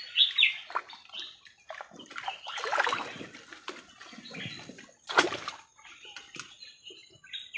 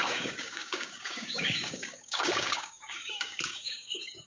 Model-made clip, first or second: second